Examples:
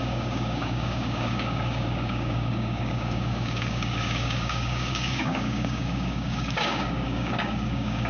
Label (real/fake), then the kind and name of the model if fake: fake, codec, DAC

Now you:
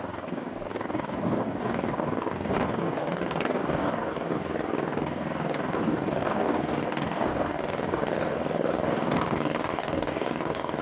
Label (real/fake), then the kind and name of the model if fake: fake, codec, DAC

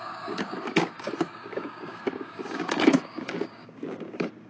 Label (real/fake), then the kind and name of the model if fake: fake, codec, DAC